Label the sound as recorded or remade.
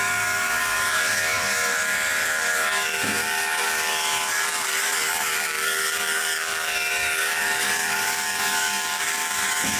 remade